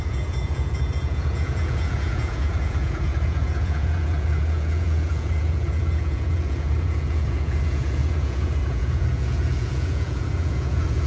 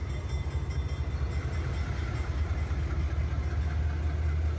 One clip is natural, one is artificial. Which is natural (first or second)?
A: second